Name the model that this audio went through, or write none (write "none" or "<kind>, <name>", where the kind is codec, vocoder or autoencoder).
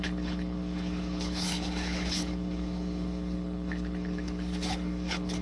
codec, HILCodec